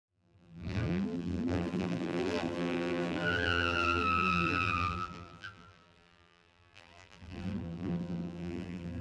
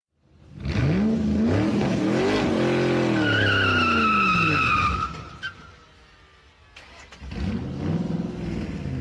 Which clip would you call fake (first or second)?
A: first